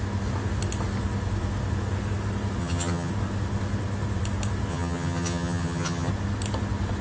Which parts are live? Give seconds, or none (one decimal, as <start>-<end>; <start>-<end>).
0.0-2.6; 3.1-4.7; 6.1-7.0